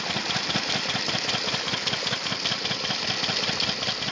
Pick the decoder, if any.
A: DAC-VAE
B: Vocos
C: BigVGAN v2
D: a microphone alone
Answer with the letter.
D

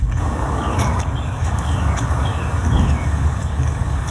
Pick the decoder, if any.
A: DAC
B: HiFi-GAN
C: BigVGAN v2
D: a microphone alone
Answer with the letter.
A